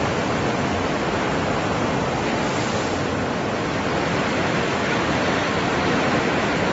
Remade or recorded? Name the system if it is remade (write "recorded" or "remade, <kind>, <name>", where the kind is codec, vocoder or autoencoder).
recorded